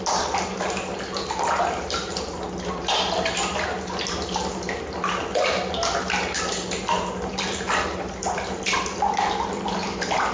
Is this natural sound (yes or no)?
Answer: yes